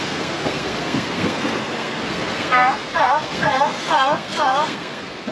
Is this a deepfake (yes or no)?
yes